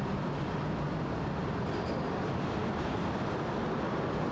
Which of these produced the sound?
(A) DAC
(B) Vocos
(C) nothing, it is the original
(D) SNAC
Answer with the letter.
C